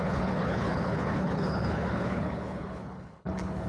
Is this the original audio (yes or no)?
no